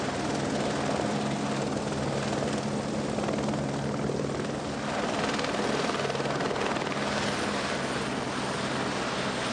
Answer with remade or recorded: recorded